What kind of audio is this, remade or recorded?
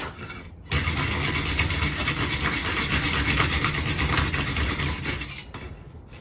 recorded